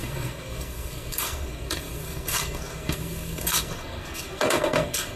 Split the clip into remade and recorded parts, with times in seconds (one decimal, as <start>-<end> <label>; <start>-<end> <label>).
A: 0.0-5.2 remade